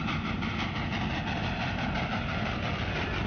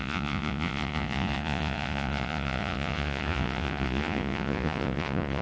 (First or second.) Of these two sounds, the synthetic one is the second